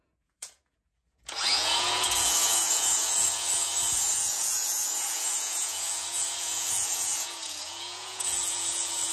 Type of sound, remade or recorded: remade